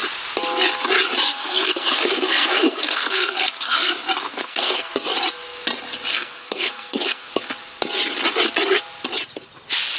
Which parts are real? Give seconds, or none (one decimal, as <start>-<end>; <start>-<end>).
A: 0.0-1.3; 3.9-4.3; 4.9-6.1; 7.3-10.0